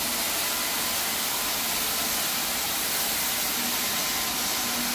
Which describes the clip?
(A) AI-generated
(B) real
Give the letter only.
B